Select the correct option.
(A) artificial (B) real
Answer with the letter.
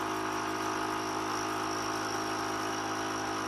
B